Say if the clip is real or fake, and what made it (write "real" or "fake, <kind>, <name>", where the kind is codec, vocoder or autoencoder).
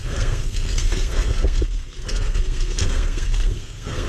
fake, codec, SNAC